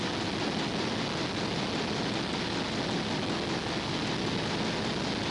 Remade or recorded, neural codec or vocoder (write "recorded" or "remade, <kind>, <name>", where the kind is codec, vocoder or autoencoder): recorded